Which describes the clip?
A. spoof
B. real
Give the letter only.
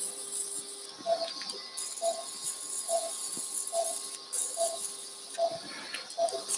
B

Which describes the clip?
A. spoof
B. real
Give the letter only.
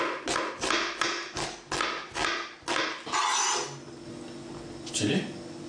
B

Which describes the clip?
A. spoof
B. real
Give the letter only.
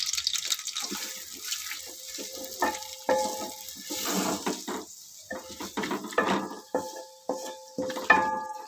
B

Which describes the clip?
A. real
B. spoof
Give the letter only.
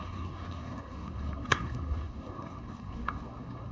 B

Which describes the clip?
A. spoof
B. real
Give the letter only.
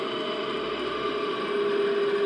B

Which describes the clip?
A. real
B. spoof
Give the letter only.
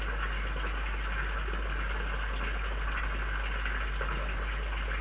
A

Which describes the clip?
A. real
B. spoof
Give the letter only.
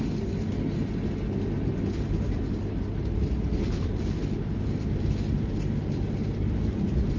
A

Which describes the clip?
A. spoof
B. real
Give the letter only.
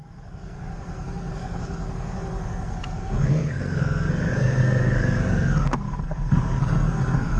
A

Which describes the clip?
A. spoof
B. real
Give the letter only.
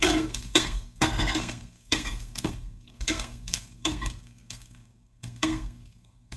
A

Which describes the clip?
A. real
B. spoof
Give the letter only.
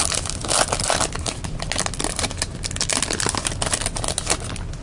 A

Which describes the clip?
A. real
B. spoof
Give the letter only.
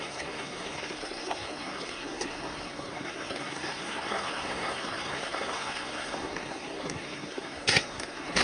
B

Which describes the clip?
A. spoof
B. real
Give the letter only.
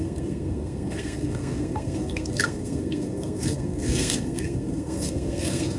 A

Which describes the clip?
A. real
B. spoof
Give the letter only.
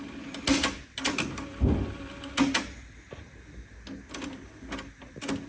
A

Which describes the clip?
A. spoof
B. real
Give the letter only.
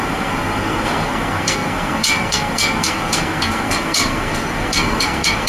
A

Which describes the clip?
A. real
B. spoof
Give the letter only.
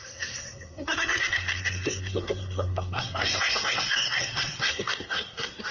B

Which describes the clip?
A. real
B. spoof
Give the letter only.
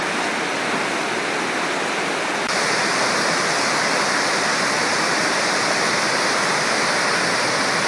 A